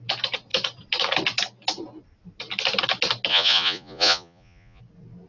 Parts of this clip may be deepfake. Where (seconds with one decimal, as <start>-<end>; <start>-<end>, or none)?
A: 3.3-4.8